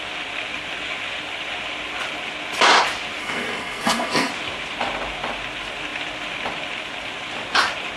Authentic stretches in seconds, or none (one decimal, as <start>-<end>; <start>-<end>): 0.0-3.2; 4.3-8.0